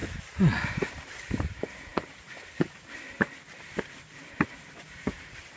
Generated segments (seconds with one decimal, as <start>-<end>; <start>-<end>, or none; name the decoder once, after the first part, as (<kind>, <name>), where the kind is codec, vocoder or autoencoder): none

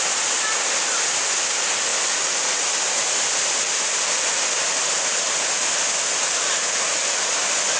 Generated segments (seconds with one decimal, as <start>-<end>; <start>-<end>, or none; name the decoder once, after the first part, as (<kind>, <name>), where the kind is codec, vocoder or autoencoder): none

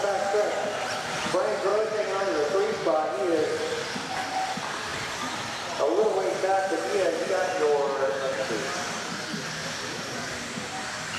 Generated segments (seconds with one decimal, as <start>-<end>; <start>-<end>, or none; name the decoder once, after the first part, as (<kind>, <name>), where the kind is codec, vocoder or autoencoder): none

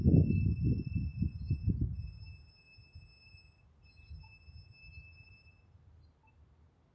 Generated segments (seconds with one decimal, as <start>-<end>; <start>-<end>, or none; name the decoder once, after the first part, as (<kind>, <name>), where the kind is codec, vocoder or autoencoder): none

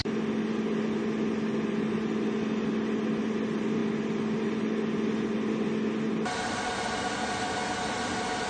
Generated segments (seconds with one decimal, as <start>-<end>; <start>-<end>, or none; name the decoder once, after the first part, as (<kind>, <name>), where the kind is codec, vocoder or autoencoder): none

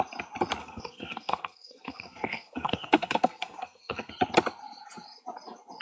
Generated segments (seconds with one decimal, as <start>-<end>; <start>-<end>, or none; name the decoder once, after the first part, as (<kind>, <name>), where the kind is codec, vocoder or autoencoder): 0.6-4.1 (codec, SNAC)

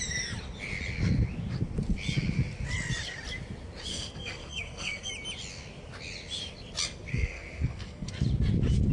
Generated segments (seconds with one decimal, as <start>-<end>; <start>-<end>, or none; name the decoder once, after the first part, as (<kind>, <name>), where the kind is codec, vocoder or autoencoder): 3.9-5.1 (codec, SNAC); 7.1-8.1

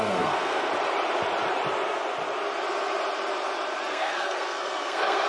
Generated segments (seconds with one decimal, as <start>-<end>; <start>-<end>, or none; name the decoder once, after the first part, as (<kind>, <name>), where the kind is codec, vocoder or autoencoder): 0.0-0.7 (codec, SNAC); 3.9-5.3